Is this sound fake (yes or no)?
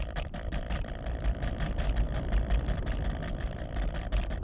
yes